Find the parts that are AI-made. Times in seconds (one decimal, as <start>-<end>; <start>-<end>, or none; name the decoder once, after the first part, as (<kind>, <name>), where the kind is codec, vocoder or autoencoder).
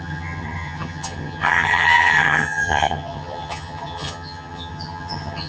0.0-5.5 (vocoder, HiFi-GAN)